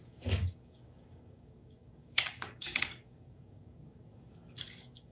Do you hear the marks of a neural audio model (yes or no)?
yes